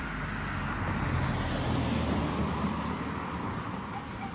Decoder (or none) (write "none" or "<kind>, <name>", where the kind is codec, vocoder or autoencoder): none